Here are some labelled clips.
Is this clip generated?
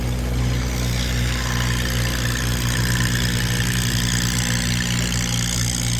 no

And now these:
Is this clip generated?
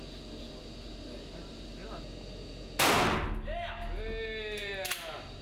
no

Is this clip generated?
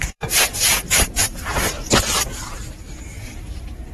yes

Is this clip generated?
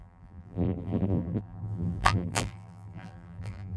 yes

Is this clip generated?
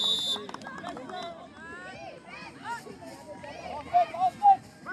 no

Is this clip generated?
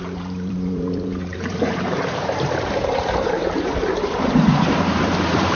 yes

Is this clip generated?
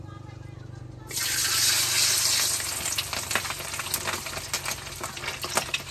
no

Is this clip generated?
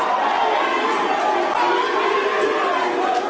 no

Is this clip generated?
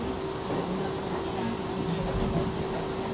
no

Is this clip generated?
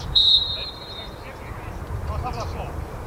yes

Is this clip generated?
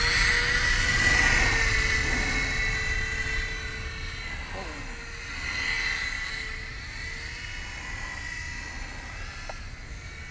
no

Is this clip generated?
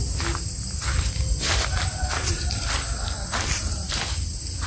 yes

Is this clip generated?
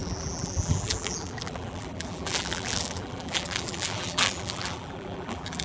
yes